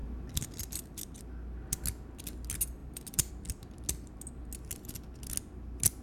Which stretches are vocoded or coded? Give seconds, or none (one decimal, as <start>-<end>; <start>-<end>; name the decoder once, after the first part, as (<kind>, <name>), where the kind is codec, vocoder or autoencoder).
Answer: none